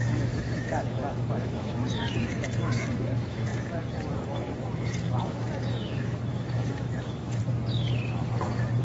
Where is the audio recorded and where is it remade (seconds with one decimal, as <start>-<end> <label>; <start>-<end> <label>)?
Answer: 0.0-7.4 remade; 7.4-8.8 recorded